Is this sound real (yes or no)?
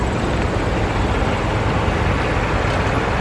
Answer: yes